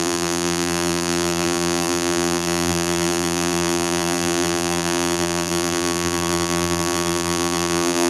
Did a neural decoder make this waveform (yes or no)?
yes